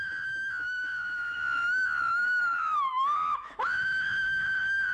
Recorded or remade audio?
remade